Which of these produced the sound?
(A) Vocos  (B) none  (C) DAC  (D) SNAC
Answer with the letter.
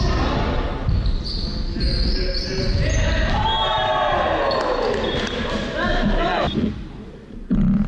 B